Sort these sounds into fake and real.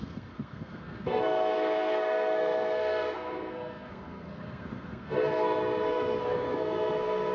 fake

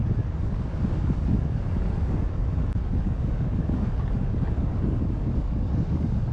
fake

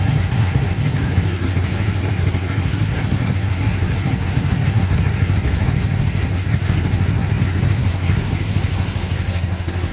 fake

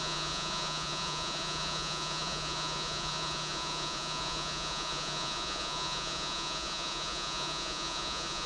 fake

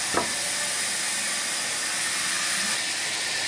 real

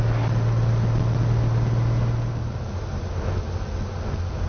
real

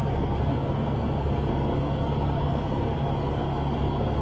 fake